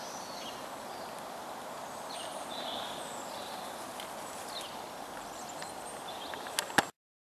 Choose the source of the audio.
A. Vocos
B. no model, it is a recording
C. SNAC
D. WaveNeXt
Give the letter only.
B